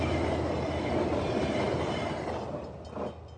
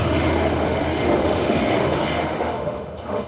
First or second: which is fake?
second